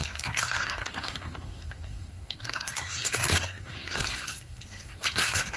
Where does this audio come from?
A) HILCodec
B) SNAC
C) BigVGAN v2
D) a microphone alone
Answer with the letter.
B